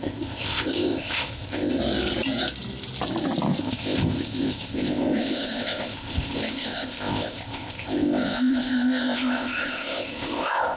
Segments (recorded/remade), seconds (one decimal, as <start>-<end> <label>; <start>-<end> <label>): 0.0-1.8 remade; 1.8-3.6 recorded; 3.6-10.8 remade